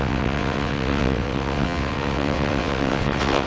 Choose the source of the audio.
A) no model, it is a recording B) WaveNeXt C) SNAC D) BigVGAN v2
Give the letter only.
B